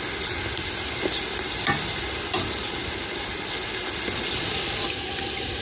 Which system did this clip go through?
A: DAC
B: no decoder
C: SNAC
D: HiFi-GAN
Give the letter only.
B